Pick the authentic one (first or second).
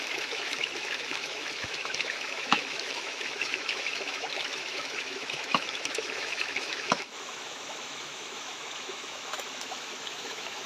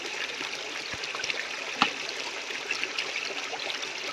second